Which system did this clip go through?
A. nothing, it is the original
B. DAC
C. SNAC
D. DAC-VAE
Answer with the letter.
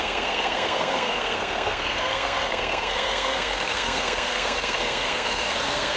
C